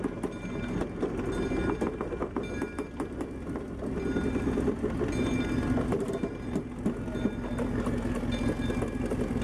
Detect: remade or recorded recorded